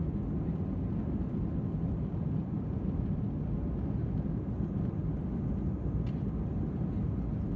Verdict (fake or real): real